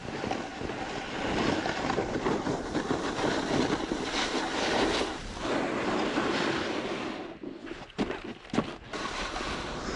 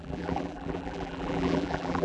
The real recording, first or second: first